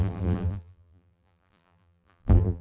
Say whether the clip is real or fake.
fake